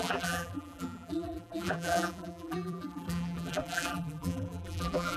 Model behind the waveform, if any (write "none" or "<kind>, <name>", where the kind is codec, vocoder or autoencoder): vocoder, BigVGAN v2